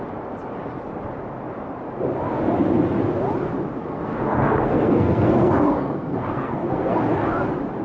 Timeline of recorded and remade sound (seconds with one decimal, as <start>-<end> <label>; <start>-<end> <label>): 0.0-3.8 recorded; 3.8-7.0 remade; 7.0-7.8 recorded